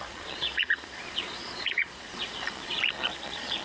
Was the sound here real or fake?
fake